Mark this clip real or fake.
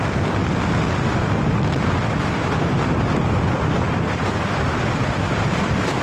real